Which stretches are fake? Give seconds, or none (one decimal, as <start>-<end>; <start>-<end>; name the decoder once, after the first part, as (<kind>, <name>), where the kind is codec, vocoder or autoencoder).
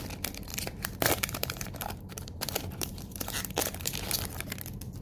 0.5-3.5 (vocoder, BigVGAN v2)